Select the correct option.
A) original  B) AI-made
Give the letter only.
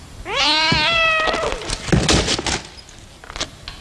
A